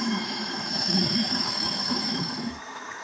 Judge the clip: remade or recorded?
remade